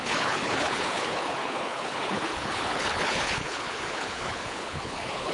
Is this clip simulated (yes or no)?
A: yes